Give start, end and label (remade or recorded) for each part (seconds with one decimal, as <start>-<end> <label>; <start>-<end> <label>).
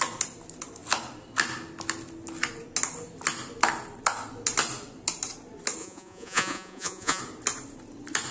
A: 0.0-5.8 recorded; 5.8-7.2 remade; 7.2-8.3 recorded